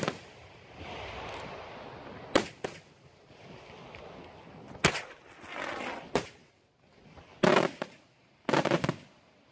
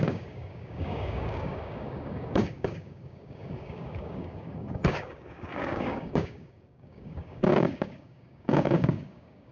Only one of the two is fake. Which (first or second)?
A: second